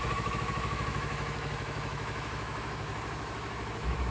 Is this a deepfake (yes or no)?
yes